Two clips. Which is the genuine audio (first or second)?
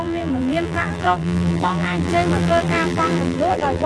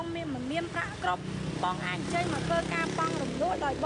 second